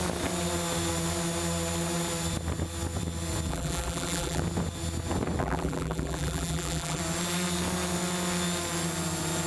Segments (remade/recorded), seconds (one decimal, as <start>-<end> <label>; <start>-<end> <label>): 0.0-3.5 recorded; 3.5-4.4 remade; 4.4-5.4 recorded; 5.4-7.0 remade; 7.0-9.5 recorded